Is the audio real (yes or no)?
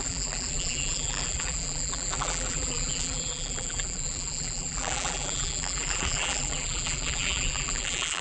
no